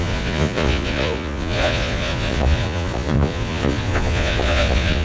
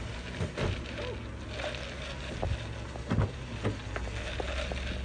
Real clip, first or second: second